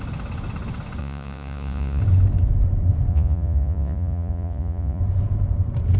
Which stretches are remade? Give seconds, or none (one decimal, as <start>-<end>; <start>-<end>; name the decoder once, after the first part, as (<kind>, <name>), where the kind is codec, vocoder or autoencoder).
1.0-2.0 (vocoder, Vocos); 3.1-5.0